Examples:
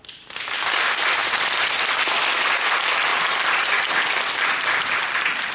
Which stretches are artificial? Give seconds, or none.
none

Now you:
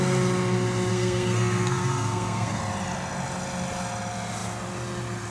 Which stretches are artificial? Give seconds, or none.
0.9-2.6 (codec, SNAC)

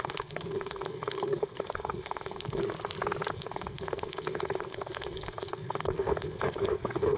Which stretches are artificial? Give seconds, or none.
0.0-2.6 (codec, SNAC); 3.3-7.2

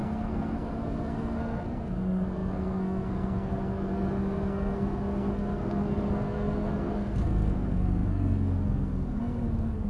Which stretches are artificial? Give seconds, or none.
0.0-9.9 (codec, SNAC)

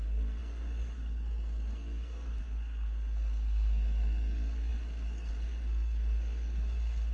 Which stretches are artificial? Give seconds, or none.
0.0-7.1 (codec, SNAC)

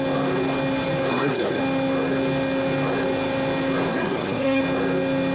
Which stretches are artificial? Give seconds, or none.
1.1-1.6 (codec, SNAC); 3.9-4.6

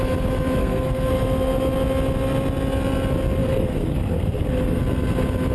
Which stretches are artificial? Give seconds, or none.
0.6-1.1 (codec, SNAC); 3.4-4.8

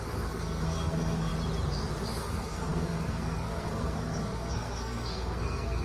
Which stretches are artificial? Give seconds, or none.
0.0-1.3 (codec, SNAC); 2.2-5.8